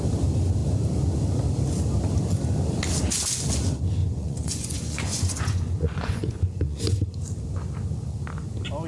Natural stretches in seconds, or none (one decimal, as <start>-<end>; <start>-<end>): 0.0-4.0; 6.8-8.9